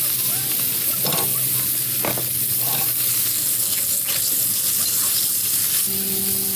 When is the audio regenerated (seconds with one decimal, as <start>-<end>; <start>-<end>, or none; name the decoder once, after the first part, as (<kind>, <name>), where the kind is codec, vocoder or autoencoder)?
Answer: none